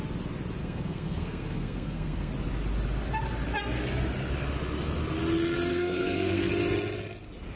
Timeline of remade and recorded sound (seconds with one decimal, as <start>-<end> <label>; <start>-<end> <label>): 0.0-0.6 recorded; 0.6-2.3 remade; 2.3-5.7 recorded; 5.7-6.5 remade; 6.5-7.6 recorded